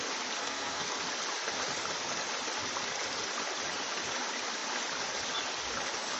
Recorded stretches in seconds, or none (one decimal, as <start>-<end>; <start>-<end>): 0.0-0.4; 0.9-6.2